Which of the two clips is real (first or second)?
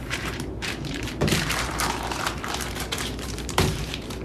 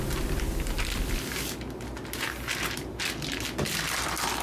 second